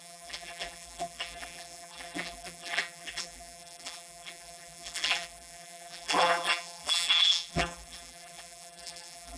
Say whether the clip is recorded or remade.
remade